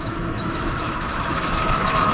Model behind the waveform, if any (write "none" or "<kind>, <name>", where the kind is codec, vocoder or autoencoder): autoencoder, DAC-VAE